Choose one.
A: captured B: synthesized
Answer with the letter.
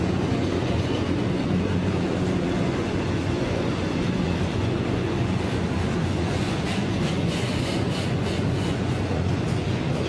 B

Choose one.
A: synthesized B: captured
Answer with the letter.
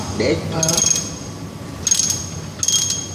B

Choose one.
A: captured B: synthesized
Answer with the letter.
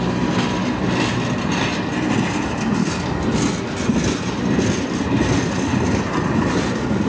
A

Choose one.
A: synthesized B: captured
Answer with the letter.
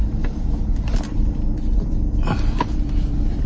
B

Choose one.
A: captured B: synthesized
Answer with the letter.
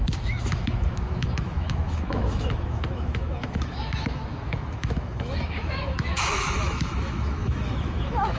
B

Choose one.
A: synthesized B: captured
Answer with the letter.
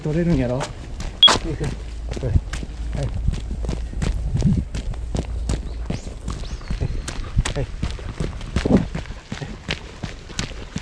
B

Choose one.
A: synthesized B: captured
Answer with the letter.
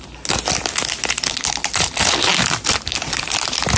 B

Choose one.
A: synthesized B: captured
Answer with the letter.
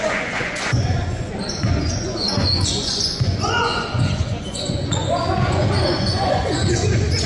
A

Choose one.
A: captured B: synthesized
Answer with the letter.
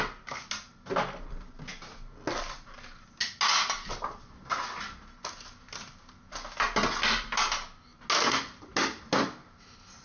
A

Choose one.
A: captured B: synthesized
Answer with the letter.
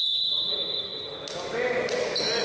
A